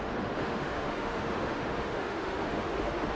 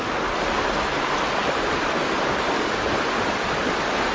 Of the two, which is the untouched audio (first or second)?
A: second